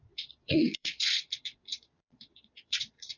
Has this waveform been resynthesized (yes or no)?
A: yes